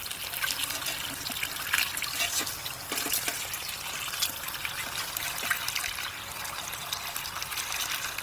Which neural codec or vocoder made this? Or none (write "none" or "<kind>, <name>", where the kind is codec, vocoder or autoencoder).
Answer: none